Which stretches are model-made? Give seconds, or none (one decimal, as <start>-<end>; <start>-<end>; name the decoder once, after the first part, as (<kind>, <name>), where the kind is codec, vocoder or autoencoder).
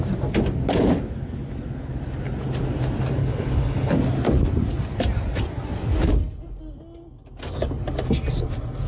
3.2-3.9 (codec, HILCodec)